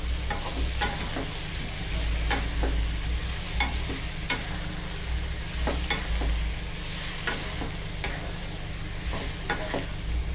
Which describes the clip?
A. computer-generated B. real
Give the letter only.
B